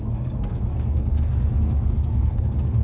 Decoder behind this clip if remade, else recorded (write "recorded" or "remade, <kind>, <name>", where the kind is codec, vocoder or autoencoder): remade, codec, SNAC